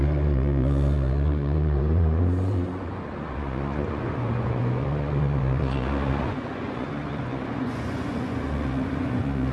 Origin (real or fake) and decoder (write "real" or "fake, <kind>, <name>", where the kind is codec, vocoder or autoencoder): fake, vocoder, Vocos